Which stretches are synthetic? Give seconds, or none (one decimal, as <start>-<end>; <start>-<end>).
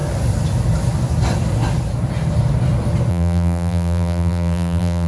3.1-5.1